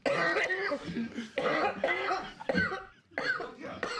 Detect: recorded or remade recorded